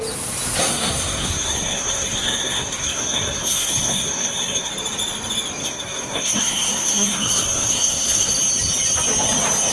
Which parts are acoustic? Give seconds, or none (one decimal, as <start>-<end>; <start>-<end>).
0.0-0.6; 4.7-5.6; 8.3-9.7